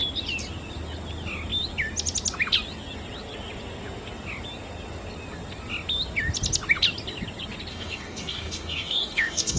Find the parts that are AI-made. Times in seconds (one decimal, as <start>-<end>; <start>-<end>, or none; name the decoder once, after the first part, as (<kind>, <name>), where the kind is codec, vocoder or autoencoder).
7.7-9.6 (codec, DAC)